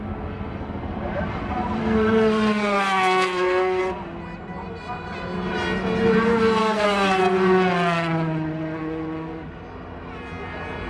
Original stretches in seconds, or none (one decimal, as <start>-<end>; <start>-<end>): 0.0-1.8; 3.8-6.6; 7.2-10.9